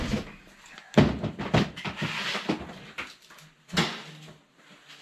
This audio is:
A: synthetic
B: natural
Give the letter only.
B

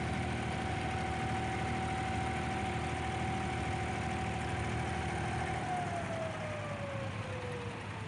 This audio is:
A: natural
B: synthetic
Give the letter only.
A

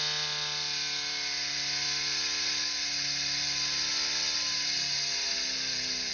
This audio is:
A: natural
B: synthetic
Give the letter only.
A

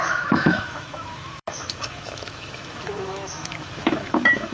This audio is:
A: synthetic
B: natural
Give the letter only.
A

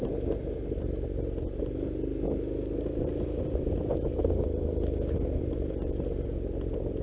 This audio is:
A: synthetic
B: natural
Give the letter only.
B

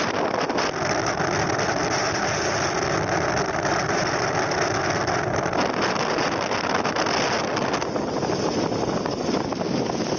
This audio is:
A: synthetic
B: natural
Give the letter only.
B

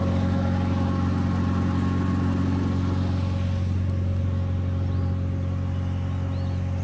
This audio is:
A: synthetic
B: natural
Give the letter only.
B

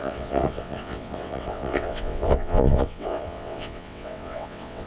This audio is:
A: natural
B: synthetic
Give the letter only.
B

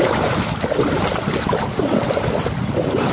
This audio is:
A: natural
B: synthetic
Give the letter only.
A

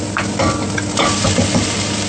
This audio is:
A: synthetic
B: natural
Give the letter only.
B